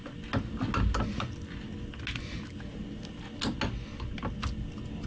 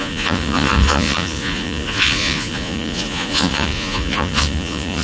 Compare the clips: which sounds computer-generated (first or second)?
second